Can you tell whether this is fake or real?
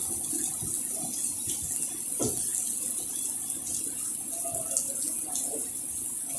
real